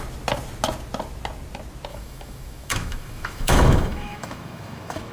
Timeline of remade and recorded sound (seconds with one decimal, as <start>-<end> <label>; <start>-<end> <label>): 0.0-1.9 recorded; 1.9-5.1 remade